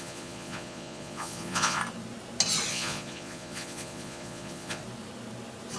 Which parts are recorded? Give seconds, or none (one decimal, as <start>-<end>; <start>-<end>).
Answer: 1.8-2.7; 4.8-5.8